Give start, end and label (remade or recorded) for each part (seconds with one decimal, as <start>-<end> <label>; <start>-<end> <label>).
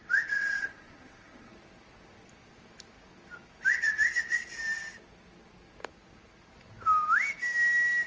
0.0-1.5 remade; 1.5-3.7 recorded; 3.7-4.5 remade; 4.5-8.1 recorded